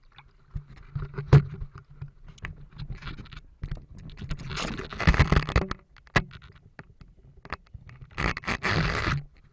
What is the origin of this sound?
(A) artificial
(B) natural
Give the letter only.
B